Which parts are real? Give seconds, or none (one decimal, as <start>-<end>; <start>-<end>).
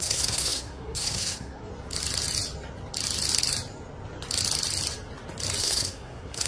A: 1.7-5.6